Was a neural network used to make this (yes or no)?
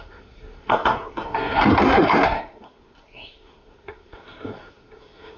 yes